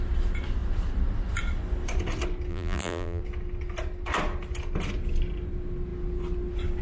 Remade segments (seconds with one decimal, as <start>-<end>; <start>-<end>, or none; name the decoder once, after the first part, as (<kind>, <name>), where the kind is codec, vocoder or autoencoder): 2.5-3.2 (vocoder, BigVGAN v2)